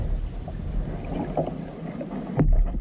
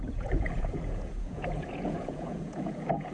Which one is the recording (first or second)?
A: first